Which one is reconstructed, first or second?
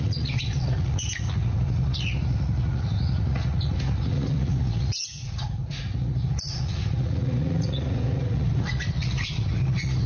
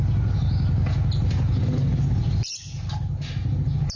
first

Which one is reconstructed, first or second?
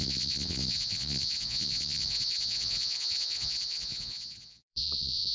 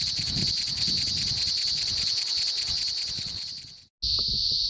first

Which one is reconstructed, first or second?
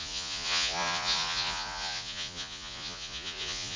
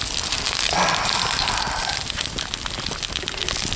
first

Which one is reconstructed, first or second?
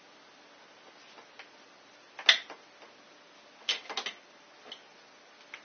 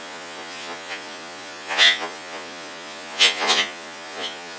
second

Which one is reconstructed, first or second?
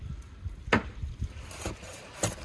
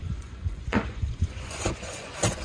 second